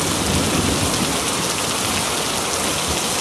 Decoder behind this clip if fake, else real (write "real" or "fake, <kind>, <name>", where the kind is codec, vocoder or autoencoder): real